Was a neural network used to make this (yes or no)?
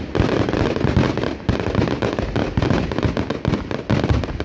no